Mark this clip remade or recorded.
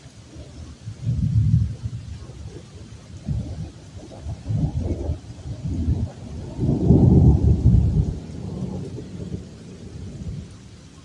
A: recorded